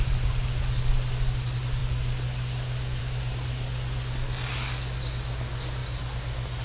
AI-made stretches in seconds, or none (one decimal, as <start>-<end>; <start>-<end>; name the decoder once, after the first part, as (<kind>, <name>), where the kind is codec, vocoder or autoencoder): none